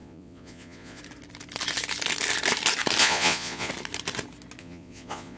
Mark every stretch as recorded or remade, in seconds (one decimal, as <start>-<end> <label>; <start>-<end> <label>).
0.0-1.0 remade; 1.0-3.0 recorded; 3.0-3.7 remade; 3.7-4.6 recorded; 4.6-5.4 remade